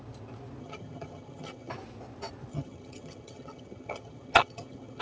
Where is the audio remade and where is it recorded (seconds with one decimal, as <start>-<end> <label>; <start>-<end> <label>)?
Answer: 0.0-0.6 recorded; 0.6-1.7 remade; 1.7-2.5 recorded; 2.5-5.0 remade